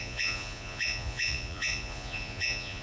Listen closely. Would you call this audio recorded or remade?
remade